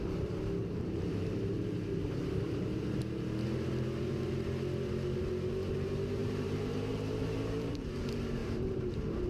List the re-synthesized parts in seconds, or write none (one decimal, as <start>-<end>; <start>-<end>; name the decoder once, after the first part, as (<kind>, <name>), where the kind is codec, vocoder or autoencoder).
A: 0.6-3.0 (vocoder, BigVGAN v2); 6.2-8.0; 8.4-9.3

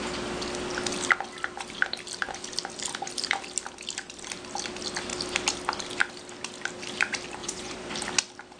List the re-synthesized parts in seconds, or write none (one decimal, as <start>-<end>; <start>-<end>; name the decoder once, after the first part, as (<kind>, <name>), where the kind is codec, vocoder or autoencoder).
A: 7.4-7.9 (vocoder, Vocos)

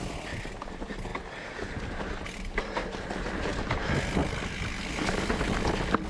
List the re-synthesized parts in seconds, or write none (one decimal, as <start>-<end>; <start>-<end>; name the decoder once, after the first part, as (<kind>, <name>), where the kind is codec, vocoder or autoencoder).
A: none

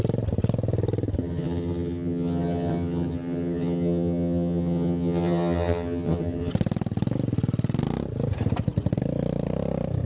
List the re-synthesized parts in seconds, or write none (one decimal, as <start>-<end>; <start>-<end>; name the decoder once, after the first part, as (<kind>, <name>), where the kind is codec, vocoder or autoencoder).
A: 1.2-6.5 (vocoder, HiFi-GAN)

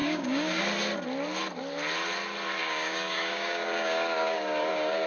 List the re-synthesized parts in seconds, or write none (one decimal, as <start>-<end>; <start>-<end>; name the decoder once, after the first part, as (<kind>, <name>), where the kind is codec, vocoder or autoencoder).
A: 0.0-0.6 (codec, DAC); 2.6-5.1